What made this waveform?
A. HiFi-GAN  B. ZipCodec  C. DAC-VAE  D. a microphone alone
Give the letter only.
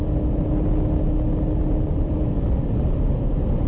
D